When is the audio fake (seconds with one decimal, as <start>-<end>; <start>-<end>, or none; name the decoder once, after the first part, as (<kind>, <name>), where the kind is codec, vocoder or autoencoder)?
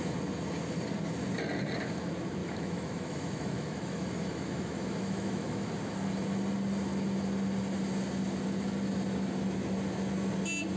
2.4-5.7 (autoencoder, DAC-VAE)